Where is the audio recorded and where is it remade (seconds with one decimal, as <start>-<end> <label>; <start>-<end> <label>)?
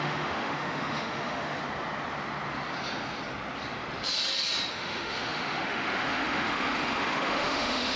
0.0-1.6 remade; 1.6-4.7 recorded; 4.7-8.0 remade